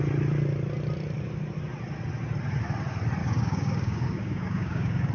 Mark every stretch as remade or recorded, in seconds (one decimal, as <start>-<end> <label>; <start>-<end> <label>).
0.0-3.2 recorded; 3.2-5.1 remade